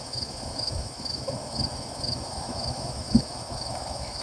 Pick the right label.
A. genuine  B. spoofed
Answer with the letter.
B